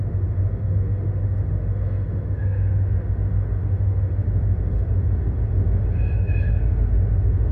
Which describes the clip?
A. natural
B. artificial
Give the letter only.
B